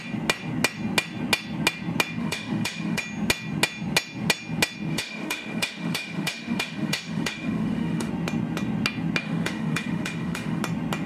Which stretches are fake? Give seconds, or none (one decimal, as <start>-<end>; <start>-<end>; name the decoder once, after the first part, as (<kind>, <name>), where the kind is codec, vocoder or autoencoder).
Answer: 2.2-3.0 (autoencoder, DAC-VAE); 4.9-8.1; 9.2-10.6